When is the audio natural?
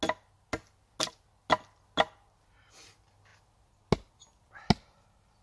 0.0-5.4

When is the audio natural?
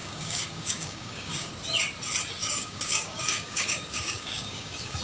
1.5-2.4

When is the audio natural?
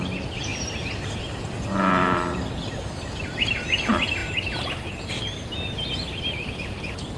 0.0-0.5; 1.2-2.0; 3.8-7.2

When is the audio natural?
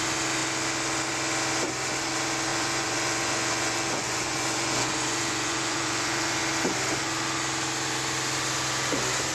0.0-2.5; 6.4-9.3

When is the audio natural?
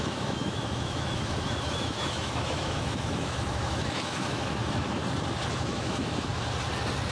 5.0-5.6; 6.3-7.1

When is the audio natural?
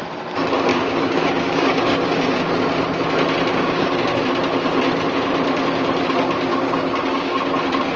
0.0-0.7; 2.5-3.5; 4.2-6.5; 7.5-8.0